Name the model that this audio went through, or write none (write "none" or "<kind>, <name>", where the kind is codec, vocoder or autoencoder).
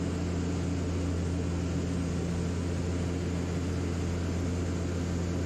none